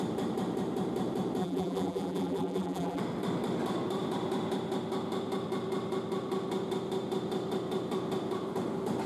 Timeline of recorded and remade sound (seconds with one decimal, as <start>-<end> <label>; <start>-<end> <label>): 0.0-1.4 recorded; 1.4-3.0 remade; 3.0-9.1 recorded